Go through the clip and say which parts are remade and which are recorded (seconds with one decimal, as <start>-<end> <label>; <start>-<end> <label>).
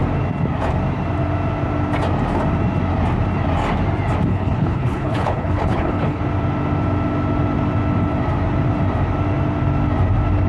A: 0.0-4.3 recorded; 4.3-6.2 remade; 6.2-10.5 recorded